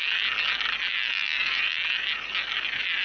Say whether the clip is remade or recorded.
recorded